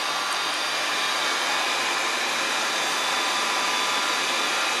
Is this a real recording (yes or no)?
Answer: yes